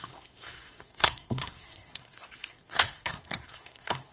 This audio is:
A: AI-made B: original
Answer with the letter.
A